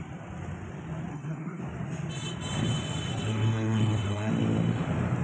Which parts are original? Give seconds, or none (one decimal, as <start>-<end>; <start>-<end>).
0.0-1.1; 1.6-3.1; 4.3-5.2